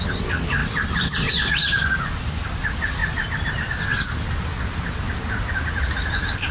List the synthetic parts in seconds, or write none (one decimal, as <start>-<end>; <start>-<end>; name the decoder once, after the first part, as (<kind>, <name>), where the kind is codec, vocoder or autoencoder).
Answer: none